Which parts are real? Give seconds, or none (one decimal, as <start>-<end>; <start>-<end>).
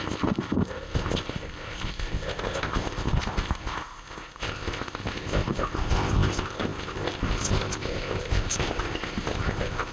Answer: none